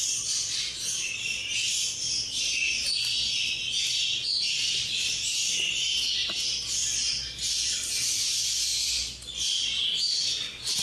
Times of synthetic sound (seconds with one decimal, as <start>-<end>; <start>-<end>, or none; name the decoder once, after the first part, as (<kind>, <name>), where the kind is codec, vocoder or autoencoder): none